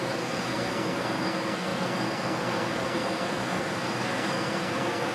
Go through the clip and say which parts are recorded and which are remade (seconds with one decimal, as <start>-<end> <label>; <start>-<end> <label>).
0.0-5.1 remade